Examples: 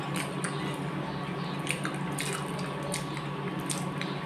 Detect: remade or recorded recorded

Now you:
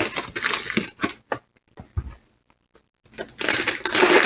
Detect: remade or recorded recorded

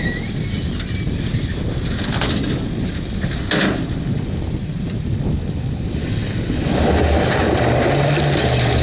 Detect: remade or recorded recorded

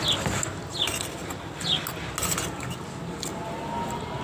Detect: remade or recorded recorded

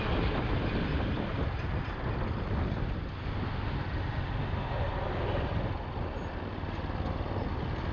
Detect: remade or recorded recorded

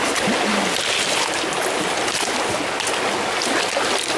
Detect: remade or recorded recorded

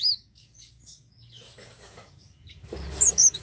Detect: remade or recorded remade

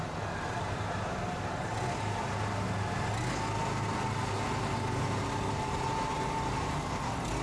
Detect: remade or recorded recorded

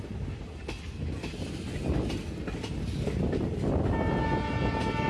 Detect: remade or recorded recorded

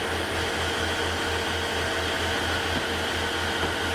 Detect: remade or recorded recorded